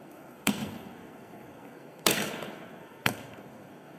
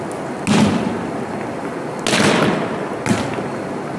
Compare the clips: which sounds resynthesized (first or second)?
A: first